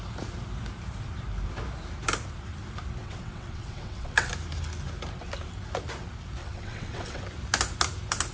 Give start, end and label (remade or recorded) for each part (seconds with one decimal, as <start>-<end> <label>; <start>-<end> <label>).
0.0-3.0 recorded; 3.0-4.3 remade; 4.3-6.4 recorded; 6.4-7.2 remade; 7.2-8.3 recorded